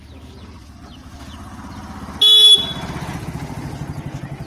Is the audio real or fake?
real